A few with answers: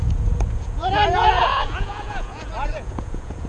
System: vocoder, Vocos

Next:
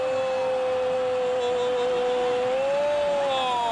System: none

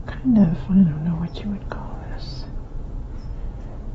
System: vocoder, Vocos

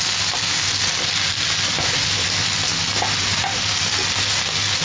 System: none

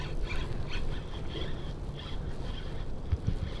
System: none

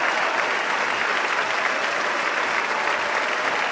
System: none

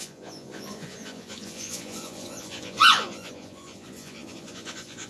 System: vocoder, Vocos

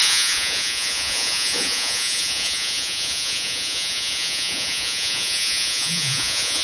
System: vocoder, Vocos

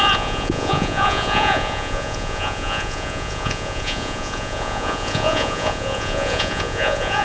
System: vocoder, Vocos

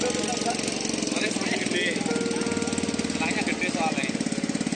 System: none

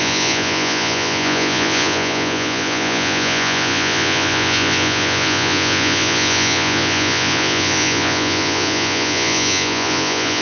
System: vocoder, Vocos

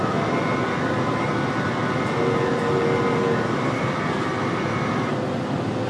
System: none